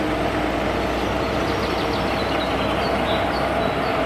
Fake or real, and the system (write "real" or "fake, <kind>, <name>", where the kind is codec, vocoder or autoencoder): real